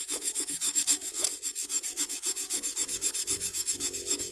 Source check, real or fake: fake